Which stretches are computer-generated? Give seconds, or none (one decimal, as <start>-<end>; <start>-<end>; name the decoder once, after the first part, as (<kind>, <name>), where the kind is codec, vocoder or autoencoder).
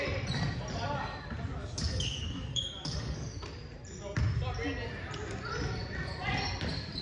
1.6-3.4 (codec, DAC)